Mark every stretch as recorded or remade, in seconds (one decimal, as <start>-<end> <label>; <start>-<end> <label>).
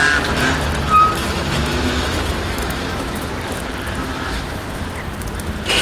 0.0-1.2 recorded; 1.2-3.3 remade; 3.3-4.0 recorded; 4.0-4.8 remade; 4.8-5.8 recorded